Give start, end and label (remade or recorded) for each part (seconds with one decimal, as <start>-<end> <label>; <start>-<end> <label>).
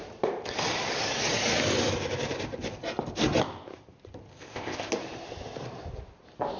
0.0-4.3 recorded; 4.3-4.9 remade; 4.9-6.6 recorded